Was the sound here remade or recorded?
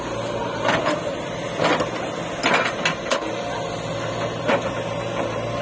recorded